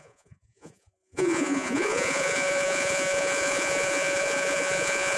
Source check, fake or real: fake